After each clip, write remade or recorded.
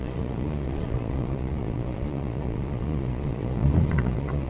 remade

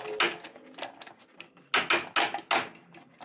recorded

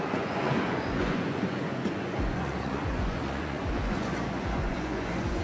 remade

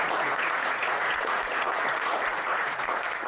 remade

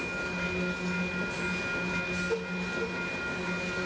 recorded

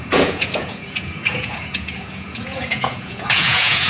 remade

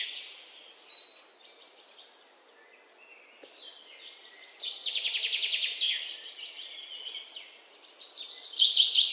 recorded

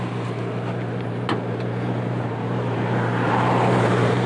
recorded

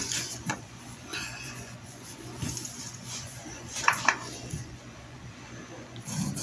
remade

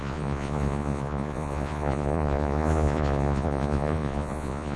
remade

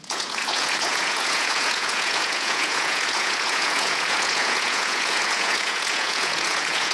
remade